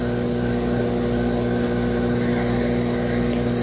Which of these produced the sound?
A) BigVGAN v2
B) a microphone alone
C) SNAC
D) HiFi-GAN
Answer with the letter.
B